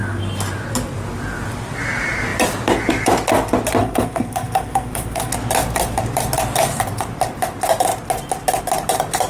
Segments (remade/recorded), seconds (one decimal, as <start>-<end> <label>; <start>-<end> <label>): 0.0-3.8 recorded; 3.8-5.3 remade; 5.3-9.3 recorded